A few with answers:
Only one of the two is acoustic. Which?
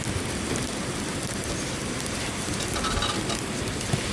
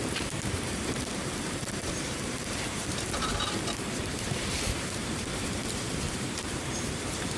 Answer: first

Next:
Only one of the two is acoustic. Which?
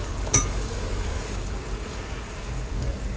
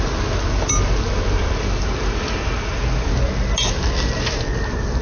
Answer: second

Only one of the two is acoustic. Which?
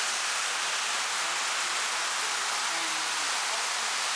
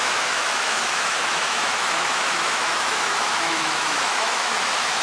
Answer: first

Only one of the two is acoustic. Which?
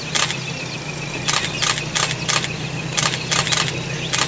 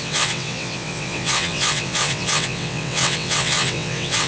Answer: first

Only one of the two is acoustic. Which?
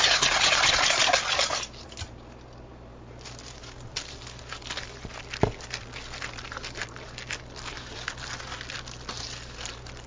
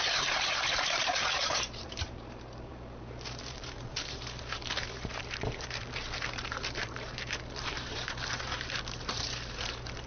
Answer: first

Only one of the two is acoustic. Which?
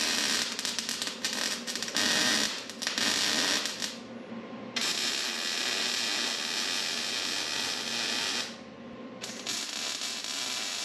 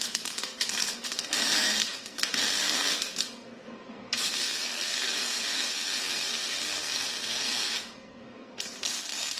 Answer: first